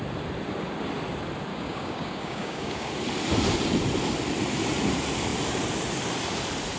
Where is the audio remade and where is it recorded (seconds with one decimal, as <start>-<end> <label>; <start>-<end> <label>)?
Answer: 0.0-1.5 recorded; 1.5-2.9 remade; 2.9-6.8 recorded